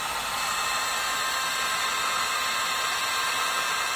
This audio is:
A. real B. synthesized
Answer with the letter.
A